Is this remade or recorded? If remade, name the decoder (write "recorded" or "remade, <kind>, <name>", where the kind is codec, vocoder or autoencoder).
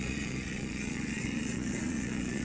remade, vocoder, Vocos